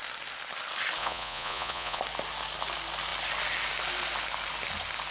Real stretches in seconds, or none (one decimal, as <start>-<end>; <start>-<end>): 0.0-1.0; 2.0-5.1